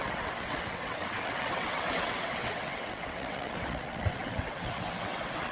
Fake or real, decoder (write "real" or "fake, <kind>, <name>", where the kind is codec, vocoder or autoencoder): fake, vocoder, WaveNeXt